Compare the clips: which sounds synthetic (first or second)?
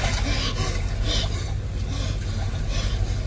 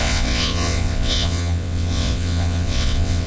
second